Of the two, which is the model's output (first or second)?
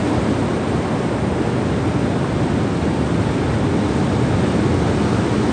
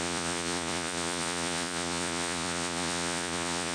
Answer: second